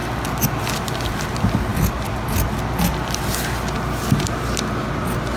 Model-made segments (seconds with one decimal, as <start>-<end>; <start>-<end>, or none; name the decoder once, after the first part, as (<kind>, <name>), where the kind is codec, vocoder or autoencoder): none

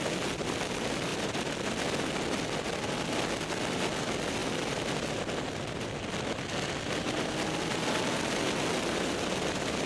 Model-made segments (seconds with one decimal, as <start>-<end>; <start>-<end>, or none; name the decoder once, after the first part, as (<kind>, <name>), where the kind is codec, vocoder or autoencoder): none